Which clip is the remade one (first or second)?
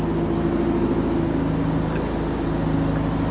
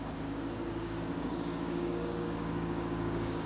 second